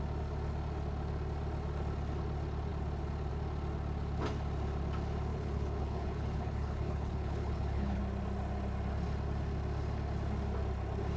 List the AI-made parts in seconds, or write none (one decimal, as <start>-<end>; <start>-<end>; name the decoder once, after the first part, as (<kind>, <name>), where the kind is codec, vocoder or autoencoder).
5.3-8.0 (codec, HILCodec)

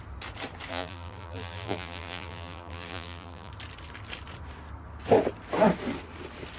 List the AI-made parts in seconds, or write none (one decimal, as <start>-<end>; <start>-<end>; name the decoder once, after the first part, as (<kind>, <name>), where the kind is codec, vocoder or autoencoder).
0.7-3.5 (vocoder, BigVGAN v2)